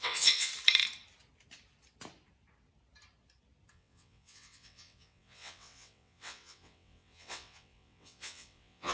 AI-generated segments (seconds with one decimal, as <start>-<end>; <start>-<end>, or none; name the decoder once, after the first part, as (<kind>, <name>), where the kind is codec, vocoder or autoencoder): 0.0-0.5 (vocoder, WaveNeXt); 3.7-8.9